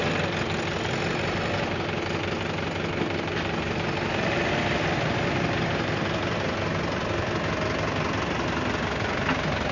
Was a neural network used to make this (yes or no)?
no